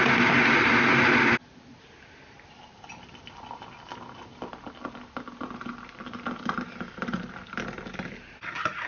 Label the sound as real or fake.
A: real